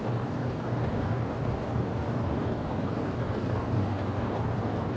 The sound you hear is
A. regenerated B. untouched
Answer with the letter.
A